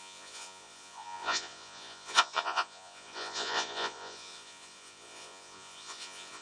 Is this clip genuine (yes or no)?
no